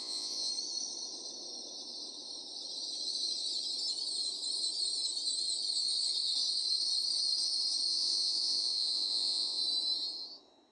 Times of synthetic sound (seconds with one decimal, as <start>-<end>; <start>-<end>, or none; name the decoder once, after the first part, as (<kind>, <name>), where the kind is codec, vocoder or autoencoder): 0.0-0.5 (vocoder, Vocos); 7.9-9.6